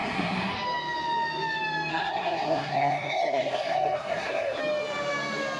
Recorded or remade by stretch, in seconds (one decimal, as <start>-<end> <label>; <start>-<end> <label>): 0.0-0.5 remade; 0.5-1.9 recorded; 1.9-4.6 remade; 4.6-5.6 recorded